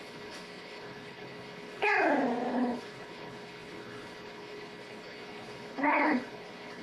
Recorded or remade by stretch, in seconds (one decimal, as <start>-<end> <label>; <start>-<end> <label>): 0.0-1.9 remade; 1.9-2.5 recorded; 2.5-6.8 remade